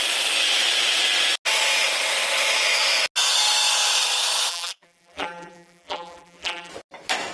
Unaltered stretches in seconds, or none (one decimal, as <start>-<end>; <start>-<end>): 0.0-4.5; 6.7-7.3